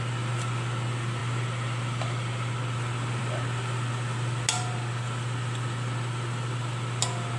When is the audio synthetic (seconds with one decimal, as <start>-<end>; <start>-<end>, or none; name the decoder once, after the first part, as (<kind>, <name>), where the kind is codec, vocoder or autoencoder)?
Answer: none

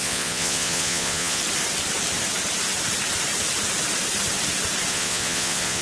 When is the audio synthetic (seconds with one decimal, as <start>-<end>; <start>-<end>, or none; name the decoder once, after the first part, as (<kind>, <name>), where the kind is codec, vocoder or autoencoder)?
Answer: 0.0-1.4 (vocoder, Vocos); 4.9-5.8

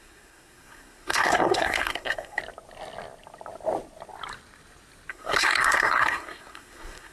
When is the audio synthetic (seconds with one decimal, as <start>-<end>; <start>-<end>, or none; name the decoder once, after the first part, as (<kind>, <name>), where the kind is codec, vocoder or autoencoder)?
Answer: 0.0-2.4 (codec, SNAC); 5.1-7.1

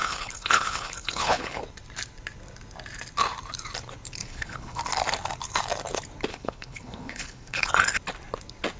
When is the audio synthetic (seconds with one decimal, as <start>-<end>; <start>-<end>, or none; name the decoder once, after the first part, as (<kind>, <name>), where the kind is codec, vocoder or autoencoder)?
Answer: 0.0-1.6 (codec, HILCodec); 4.2-4.8; 6.3-7.7

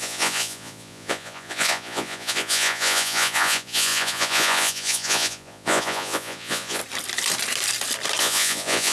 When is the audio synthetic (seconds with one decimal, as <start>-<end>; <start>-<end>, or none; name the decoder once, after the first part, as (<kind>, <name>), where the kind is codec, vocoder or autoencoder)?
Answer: 0.0-6.8 (vocoder, Vocos); 8.2-8.9

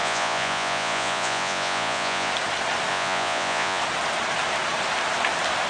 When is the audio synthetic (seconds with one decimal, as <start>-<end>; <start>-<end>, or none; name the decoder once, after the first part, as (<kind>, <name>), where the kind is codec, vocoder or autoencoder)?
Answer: 0.0-2.3 (vocoder, Vocos); 2.9-3.8

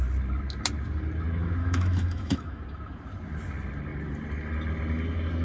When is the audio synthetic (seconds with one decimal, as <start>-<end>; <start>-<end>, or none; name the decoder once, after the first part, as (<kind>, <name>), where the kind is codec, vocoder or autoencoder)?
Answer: 1.6-2.6 (autoencoder, DAC-VAE)

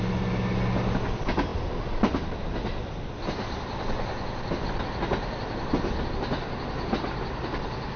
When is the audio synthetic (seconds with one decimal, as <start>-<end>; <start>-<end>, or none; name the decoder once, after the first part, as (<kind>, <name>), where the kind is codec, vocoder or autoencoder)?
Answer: none